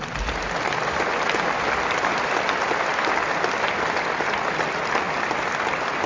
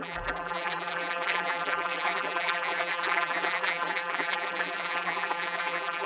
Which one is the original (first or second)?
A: first